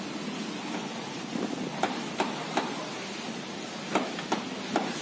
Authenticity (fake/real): real